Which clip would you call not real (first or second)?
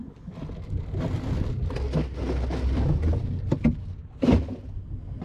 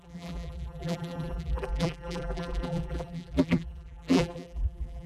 second